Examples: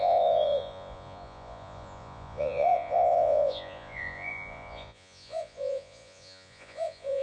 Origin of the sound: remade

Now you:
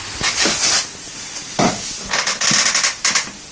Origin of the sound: recorded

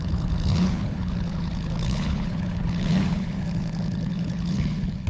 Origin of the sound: remade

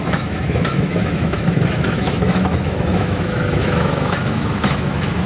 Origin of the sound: remade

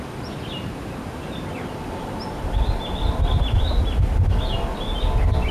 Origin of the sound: recorded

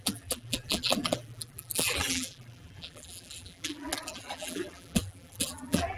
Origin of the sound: remade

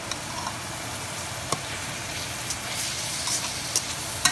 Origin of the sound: remade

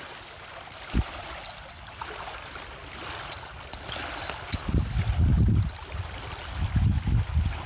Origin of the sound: recorded